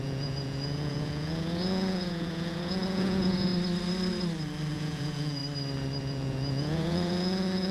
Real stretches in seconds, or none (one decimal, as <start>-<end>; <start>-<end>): 3.5-4.7; 5.4-6.0

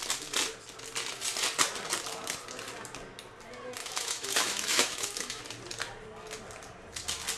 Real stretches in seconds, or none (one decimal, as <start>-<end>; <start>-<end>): 0.0-3.8; 5.4-7.4

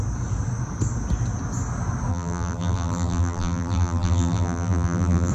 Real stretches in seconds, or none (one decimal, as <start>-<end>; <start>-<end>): 0.0-2.1

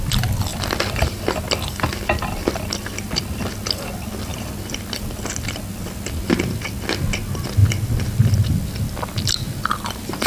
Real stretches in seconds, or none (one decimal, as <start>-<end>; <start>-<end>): 0.0-0.5; 2.8-7.6; 9.6-10.3

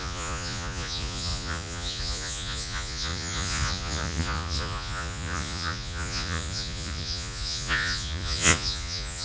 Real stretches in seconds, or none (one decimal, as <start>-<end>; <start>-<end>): none